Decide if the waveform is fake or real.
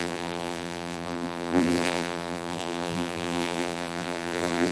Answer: fake